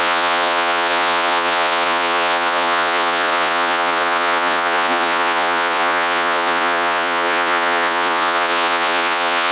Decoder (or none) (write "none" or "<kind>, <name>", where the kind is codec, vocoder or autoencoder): vocoder, Vocos